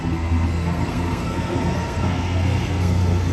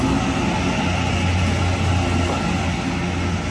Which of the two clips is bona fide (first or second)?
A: second